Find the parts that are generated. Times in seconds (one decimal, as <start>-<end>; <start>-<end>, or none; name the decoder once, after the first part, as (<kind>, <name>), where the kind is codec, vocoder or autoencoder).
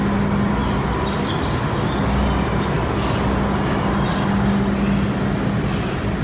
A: none